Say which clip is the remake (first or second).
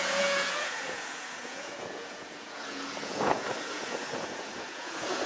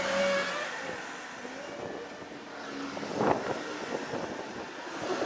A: first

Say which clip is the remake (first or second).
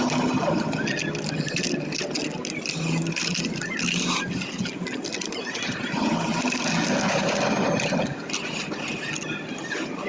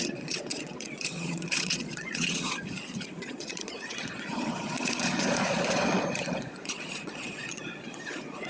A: second